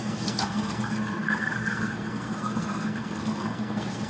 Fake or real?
fake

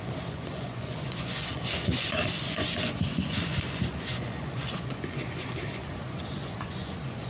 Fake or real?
fake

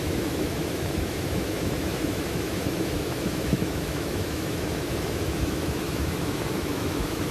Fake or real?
fake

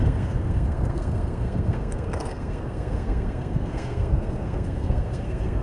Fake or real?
fake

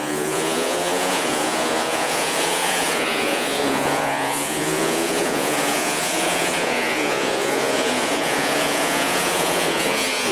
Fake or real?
fake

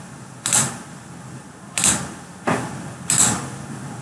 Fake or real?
real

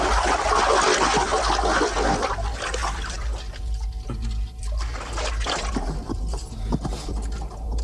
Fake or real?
real